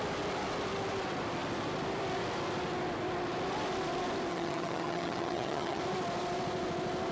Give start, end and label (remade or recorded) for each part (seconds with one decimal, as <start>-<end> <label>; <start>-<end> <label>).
0.0-4.3 recorded; 4.3-5.8 remade; 5.8-7.1 recorded